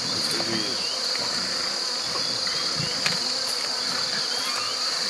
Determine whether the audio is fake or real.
real